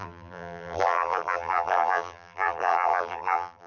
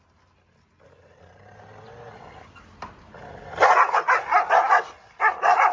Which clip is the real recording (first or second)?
second